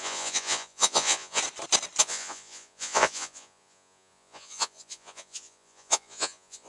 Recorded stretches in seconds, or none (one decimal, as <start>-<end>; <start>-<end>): 1.4-2.0